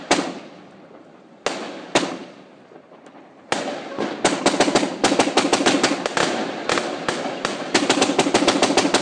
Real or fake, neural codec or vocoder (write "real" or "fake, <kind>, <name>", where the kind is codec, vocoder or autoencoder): real